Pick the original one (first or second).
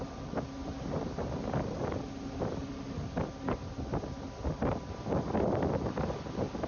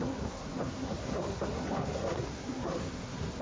first